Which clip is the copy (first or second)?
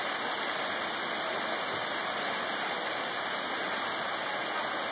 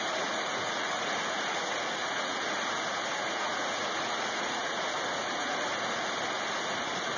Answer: second